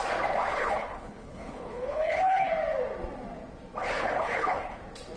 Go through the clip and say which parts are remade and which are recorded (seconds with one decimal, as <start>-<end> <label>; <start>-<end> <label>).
0.0-0.5 recorded; 0.5-2.5 remade; 2.5-3.8 recorded; 3.8-4.8 remade; 4.8-5.2 recorded